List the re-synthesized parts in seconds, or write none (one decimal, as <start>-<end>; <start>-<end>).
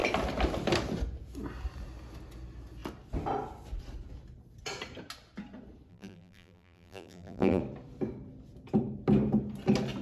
5.9-7.6